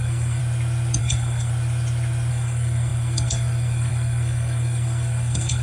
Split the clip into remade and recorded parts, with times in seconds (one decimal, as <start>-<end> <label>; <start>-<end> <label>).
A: 0.0-0.4 remade; 0.4-1.0 recorded; 1.0-1.5 remade; 1.5-2.3 recorded; 2.3-5.6 remade